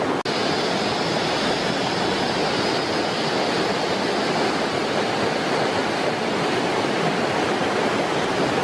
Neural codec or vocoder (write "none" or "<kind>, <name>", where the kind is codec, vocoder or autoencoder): none